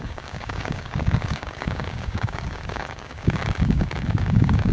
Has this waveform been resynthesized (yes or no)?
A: yes